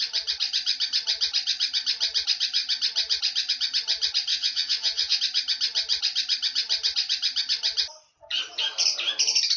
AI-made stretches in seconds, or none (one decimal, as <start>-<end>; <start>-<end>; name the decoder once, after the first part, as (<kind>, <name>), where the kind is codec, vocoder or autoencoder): 4.3-5.2 (vocoder, Vocos)